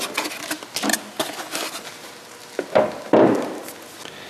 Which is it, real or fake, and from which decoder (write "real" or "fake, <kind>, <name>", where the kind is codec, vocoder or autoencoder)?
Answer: real